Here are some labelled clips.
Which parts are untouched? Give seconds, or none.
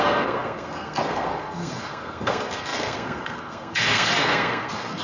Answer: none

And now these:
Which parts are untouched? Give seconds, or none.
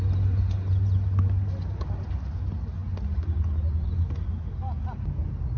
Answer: 0.0-5.6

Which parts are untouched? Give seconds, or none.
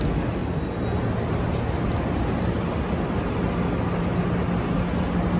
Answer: 0.0-5.4